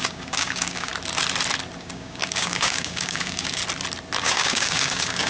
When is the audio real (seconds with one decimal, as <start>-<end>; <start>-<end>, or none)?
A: 0.9-1.8; 3.6-4.2